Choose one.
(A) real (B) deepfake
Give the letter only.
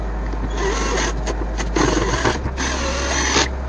A